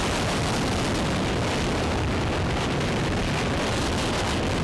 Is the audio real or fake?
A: real